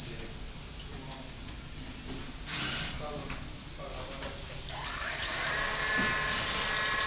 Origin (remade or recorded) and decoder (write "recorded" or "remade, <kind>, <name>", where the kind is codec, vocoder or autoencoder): recorded